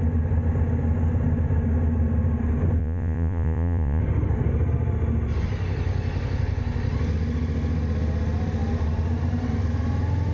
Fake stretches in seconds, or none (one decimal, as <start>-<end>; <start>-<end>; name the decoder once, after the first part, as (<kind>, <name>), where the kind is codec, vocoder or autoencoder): 2.8-4.0 (vocoder, Vocos)